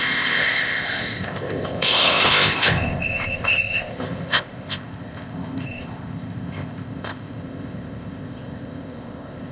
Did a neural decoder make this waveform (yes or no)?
yes